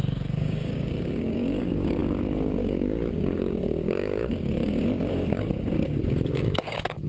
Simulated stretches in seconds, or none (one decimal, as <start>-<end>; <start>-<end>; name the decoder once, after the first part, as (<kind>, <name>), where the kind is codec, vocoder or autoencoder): 0.0-7.1 (codec, DAC)